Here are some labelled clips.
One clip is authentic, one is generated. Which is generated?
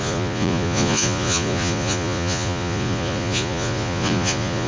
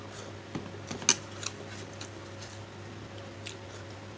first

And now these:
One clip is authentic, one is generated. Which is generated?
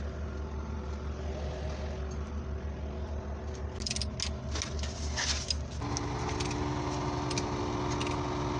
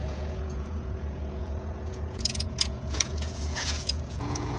second